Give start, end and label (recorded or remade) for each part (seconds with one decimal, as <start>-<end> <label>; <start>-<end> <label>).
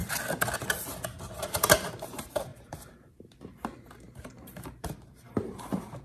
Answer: 0.0-1.4 recorded; 1.4-6.0 remade